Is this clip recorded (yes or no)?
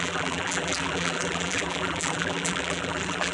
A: no